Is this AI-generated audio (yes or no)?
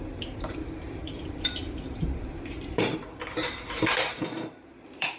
yes